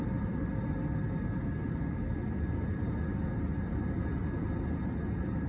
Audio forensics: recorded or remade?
recorded